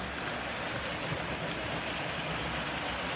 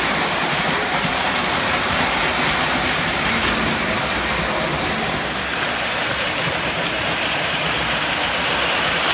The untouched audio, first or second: first